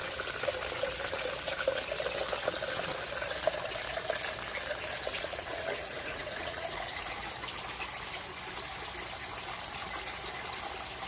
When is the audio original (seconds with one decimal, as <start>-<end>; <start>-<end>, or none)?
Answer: 0.0-5.1; 7.3-11.1